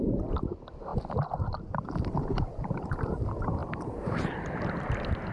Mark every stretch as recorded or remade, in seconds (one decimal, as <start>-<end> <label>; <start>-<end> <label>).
0.0-3.6 recorded; 3.6-4.5 remade; 4.5-5.3 recorded